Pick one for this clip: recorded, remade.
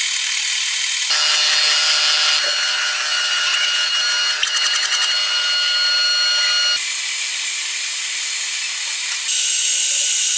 recorded